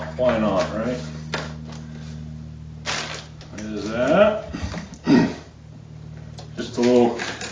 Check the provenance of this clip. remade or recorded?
recorded